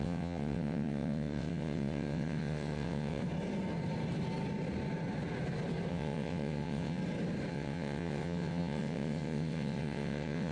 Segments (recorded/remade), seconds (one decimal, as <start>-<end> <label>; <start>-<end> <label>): 0.0-3.2 remade; 3.2-5.9 recorded; 5.9-7.0 remade; 7.0-7.5 recorded; 7.5-10.5 remade